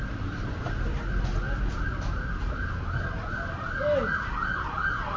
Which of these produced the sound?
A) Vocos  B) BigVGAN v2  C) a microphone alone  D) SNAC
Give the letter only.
C